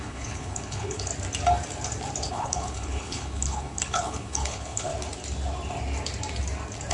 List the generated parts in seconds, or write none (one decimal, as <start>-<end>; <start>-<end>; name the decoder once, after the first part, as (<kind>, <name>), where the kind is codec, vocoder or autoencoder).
0.0-1.1 (codec, HILCodec); 2.3-4.9